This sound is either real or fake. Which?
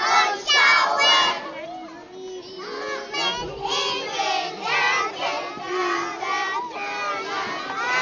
real